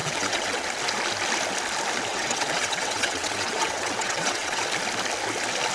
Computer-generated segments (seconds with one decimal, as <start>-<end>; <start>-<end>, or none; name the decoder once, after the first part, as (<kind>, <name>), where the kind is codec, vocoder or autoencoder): 0.0-0.7 (vocoder, WaveNeXt); 2.1-4.6